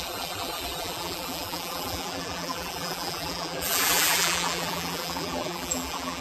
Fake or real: fake